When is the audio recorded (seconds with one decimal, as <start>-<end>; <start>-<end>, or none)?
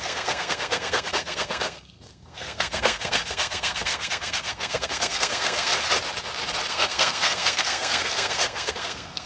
5.7-6.7